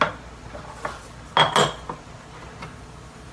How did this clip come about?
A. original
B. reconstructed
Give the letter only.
A